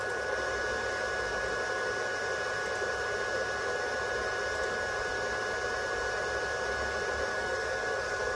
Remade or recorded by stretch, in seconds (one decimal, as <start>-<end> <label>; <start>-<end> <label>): 0.0-7.3 recorded; 7.3-8.4 remade